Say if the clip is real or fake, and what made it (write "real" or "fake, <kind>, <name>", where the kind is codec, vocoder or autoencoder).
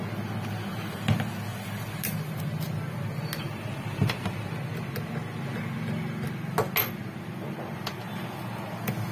real